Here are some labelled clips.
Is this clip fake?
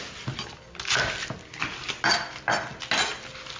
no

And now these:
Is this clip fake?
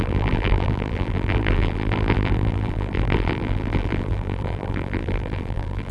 yes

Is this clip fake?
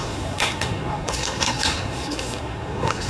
yes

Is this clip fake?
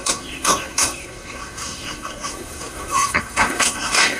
yes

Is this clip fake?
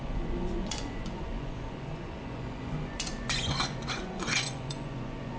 yes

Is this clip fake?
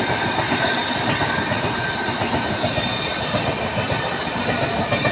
no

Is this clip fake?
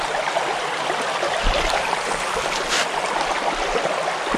no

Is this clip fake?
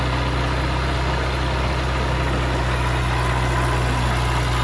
no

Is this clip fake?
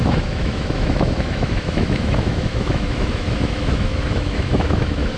yes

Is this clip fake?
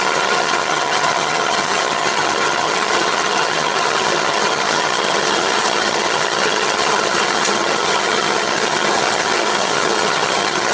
yes